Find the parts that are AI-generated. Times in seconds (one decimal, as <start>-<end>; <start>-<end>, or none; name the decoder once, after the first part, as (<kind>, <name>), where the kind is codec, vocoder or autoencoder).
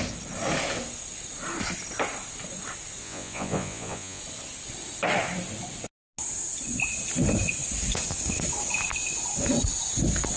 3.0-4.2 (vocoder, Vocos)